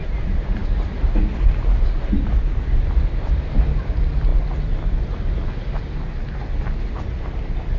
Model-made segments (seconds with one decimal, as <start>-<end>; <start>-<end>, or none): none